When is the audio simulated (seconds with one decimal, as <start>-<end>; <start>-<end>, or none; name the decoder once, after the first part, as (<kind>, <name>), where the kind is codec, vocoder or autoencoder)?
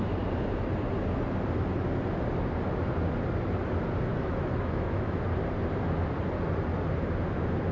4.1-5.2 (autoencoder, DAC-VAE)